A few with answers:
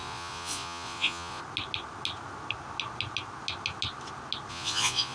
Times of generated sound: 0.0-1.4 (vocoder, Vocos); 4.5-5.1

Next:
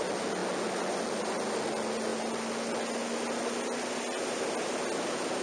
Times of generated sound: none